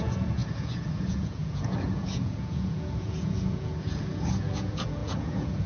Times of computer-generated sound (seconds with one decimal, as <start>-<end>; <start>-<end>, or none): 0.0-5.7